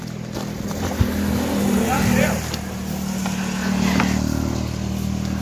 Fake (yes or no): no